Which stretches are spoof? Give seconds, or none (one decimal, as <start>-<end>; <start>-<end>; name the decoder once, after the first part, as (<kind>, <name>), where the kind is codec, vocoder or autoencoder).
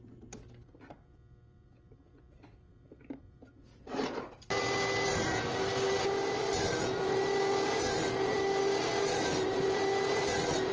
none